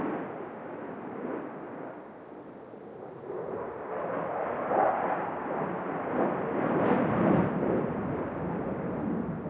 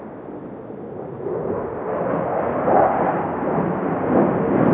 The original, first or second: second